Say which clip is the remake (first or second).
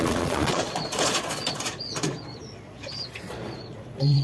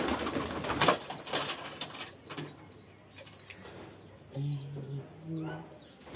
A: first